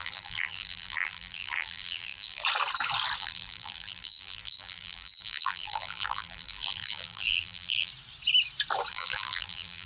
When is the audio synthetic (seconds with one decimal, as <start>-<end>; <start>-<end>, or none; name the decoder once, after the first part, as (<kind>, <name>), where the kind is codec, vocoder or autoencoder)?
0.0-2.4 (vocoder, BigVGAN v2); 3.2-7.9; 8.9-9.9